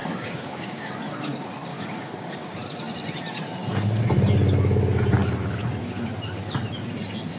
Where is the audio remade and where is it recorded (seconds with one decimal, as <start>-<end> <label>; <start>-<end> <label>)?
0.0-0.9 remade; 0.9-1.7 recorded; 1.7-2.5 remade; 2.5-7.4 recorded